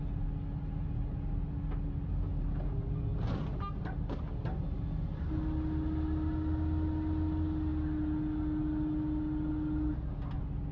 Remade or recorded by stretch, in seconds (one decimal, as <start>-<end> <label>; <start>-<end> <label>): 0.0-10.7 recorded